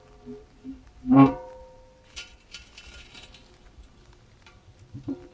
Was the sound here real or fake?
real